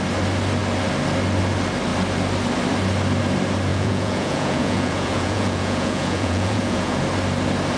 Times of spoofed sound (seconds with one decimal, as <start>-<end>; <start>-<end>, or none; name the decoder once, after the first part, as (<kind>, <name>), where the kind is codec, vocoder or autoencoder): 3.7-7.0 (vocoder, Vocos)